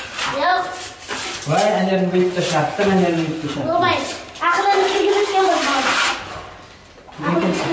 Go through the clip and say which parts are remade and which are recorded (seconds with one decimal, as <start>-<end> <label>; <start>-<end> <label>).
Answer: 0.0-7.7 recorded